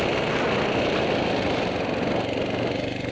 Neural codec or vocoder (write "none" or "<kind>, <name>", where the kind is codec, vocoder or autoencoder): none